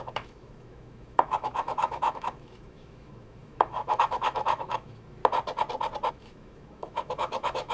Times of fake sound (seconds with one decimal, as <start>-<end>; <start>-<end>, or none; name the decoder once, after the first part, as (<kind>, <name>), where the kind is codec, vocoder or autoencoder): 0.0-5.2 (autoencoder, DAC-VAE); 6.1-7.7